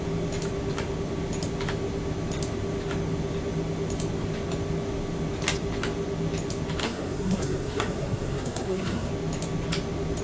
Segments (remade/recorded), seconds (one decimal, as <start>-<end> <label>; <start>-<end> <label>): 0.0-6.8 recorded; 6.8-9.1 remade; 9.1-10.2 recorded